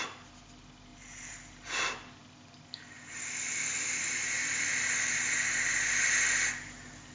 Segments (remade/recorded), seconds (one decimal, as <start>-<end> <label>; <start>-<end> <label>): 0.0-7.1 recorded